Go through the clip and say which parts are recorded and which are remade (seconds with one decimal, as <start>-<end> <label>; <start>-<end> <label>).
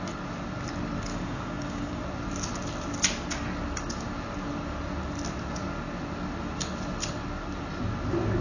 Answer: 0.0-1.1 recorded; 1.1-2.0 remade; 2.0-8.4 recorded